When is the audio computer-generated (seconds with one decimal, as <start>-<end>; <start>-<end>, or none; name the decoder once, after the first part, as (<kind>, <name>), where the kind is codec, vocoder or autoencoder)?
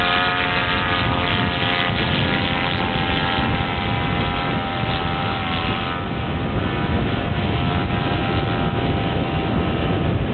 none